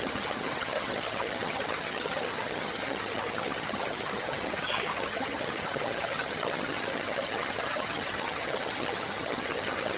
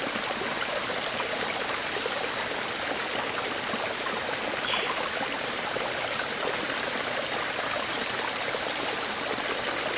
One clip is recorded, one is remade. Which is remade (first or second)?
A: first